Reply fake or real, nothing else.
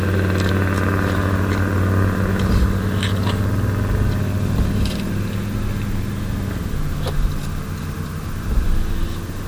real